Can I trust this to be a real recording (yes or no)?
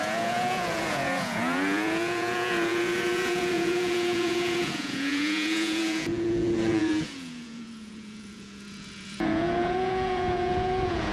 no